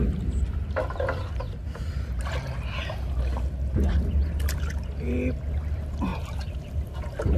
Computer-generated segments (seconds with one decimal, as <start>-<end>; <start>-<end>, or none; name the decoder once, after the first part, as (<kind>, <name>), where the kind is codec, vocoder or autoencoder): none